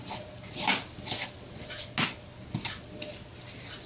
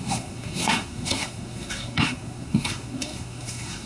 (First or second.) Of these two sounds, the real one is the first